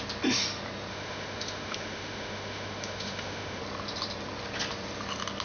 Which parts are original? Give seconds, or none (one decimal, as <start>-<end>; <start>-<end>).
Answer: 0.0-0.9; 3.6-5.4